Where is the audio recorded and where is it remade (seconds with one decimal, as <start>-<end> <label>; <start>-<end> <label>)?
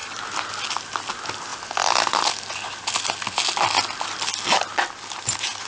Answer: 0.0-5.7 recorded